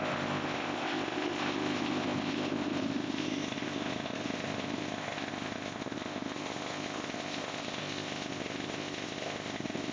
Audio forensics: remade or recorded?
remade